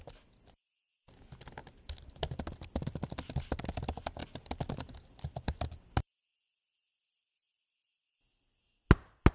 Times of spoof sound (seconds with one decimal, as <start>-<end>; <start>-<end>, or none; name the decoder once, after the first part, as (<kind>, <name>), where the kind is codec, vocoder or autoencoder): none